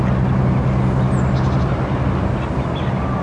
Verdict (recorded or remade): recorded